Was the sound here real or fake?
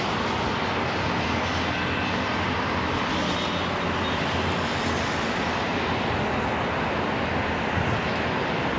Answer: real